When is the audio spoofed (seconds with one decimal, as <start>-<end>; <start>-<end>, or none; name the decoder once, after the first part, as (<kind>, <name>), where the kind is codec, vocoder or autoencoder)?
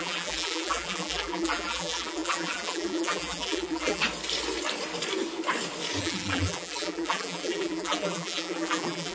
0.0-4.0 (vocoder, BigVGAN v2); 6.0-9.1